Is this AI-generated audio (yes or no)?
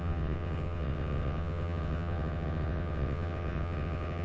yes